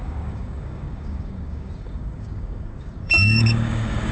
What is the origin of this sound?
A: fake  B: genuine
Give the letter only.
A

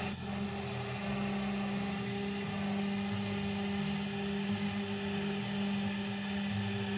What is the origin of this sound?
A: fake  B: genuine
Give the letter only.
B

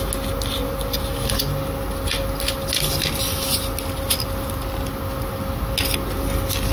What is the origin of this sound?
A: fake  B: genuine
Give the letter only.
B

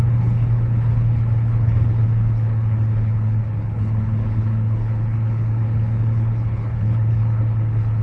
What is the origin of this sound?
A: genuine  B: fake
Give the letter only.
B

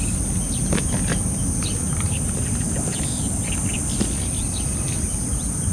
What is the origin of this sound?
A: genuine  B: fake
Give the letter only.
A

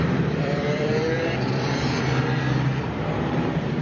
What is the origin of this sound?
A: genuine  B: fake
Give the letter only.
B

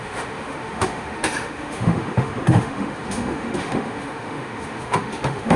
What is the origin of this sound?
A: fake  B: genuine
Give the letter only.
A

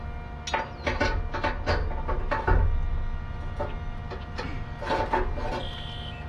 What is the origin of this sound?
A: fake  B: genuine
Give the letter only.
B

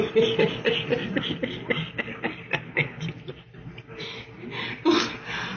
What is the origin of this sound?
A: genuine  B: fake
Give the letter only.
A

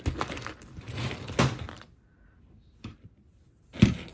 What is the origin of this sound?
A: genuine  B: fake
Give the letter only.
A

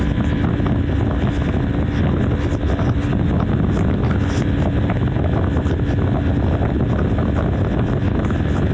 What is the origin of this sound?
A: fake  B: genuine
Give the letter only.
B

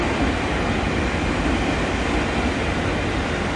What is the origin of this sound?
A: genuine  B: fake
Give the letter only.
A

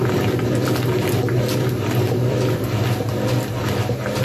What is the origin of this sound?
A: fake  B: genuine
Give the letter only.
B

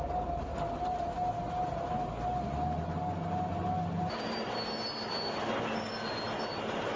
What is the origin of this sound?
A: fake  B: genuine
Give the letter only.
B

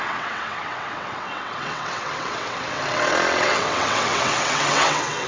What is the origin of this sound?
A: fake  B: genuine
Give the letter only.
A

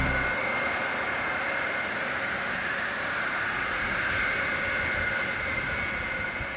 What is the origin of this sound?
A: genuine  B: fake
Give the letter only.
A